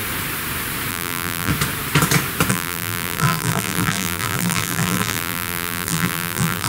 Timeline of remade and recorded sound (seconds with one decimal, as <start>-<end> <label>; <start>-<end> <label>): 0.0-0.9 recorded; 0.9-1.5 remade; 1.5-2.5 recorded; 2.5-6.7 remade